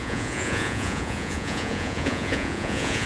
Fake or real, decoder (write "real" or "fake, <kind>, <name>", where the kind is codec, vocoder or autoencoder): fake, vocoder, Vocos